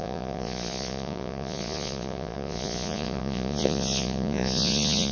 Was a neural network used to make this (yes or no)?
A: yes